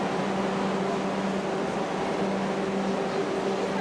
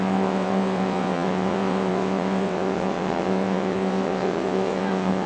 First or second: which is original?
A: first